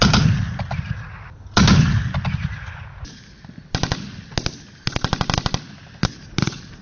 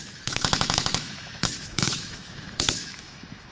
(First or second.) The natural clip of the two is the first